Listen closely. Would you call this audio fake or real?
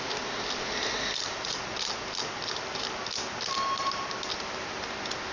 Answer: real